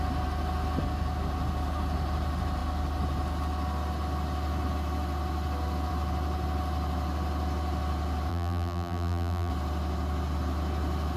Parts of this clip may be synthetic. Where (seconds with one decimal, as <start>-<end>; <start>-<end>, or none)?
8.3-9.5